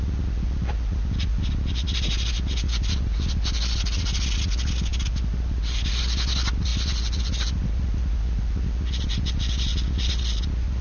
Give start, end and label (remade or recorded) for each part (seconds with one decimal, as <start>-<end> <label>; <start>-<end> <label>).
0.0-10.8 recorded